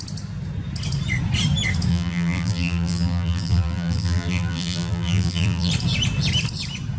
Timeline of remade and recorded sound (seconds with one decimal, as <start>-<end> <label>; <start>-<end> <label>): 0.0-1.9 recorded; 1.9-5.7 remade; 5.7-7.0 recorded